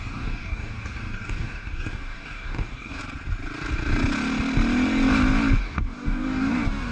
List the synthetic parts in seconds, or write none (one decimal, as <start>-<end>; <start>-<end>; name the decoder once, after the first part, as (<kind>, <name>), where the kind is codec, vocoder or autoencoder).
0.0-3.0 (codec, DAC); 5.6-6.9